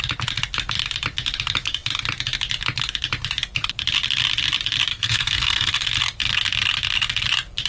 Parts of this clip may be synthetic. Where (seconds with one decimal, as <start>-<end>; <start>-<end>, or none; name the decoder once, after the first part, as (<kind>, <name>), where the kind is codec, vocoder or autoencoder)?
4.9-5.7 (codec, SNAC)